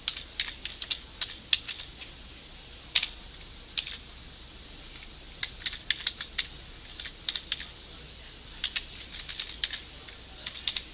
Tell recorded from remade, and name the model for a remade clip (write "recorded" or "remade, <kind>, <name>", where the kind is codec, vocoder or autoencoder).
recorded